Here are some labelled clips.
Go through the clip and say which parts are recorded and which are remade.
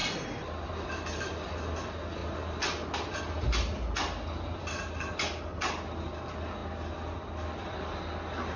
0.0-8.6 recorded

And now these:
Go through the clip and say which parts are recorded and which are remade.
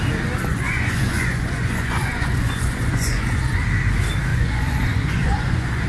0.0-0.5 recorded; 0.5-3.6 remade; 3.6-4.3 recorded; 4.3-5.9 remade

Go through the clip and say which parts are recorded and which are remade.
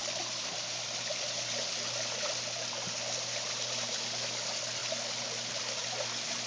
0.0-6.5 recorded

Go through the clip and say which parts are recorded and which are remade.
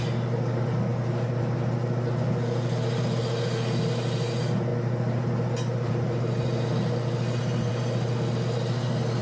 0.0-9.2 recorded